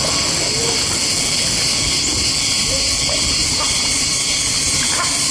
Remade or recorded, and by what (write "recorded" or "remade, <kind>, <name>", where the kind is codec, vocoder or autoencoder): recorded